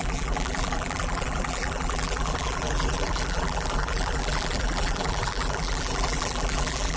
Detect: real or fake fake